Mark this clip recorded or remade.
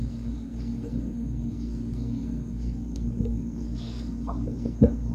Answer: remade